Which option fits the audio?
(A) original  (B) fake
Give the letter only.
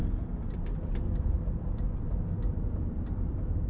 A